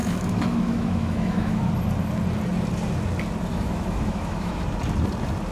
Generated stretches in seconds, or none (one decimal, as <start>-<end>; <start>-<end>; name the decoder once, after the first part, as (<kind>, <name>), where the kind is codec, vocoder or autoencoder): 0.0-1.7 (autoencoder, DAC-VAE); 3.5-4.6